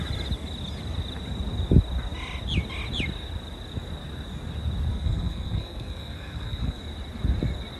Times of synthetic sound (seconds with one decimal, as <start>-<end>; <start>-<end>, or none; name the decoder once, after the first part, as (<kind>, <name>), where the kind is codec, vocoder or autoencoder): 4.9-6.8 (codec, SNAC)